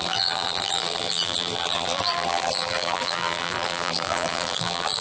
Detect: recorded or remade remade